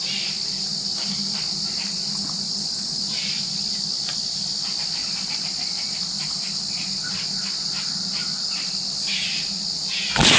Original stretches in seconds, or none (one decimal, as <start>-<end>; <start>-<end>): 0.0-10.4